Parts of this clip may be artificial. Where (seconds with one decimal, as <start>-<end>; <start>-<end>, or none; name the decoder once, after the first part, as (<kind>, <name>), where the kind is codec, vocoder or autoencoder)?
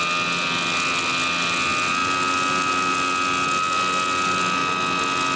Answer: none